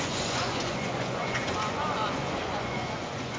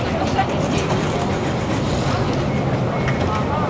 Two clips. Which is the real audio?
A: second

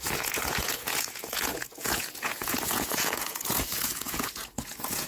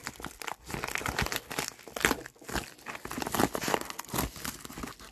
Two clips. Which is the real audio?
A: second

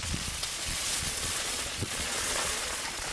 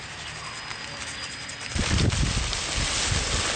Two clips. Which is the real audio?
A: second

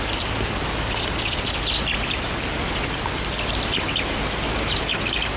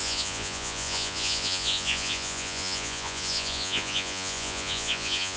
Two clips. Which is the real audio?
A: first